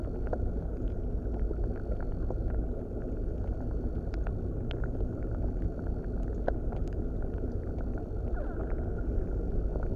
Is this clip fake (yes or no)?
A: no